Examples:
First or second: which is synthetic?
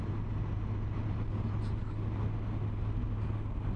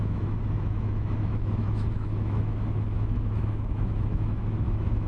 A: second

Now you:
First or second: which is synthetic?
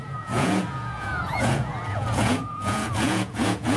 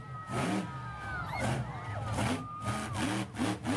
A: first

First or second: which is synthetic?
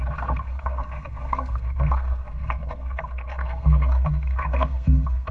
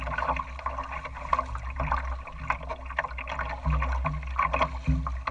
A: first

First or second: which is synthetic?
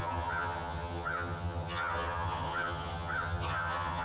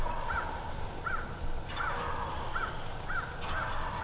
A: first